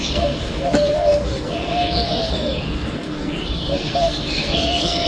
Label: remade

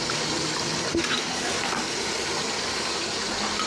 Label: recorded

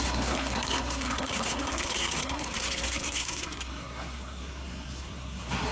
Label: remade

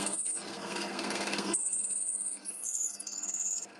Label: remade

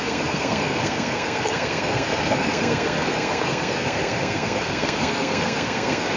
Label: remade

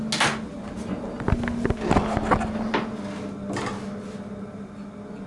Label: recorded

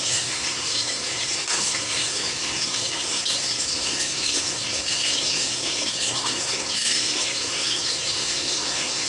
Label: remade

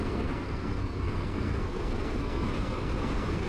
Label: remade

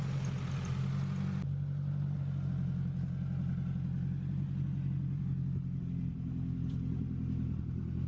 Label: recorded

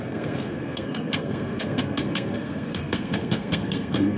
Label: remade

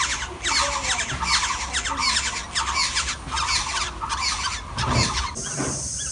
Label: recorded